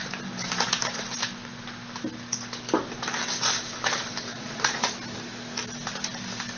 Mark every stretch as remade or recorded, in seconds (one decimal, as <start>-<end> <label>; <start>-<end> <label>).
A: 0.0-4.3 recorded; 4.3-4.9 remade; 4.9-6.6 recorded